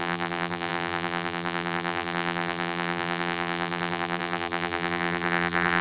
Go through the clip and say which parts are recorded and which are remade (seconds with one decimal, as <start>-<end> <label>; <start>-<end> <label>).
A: 0.0-5.8 remade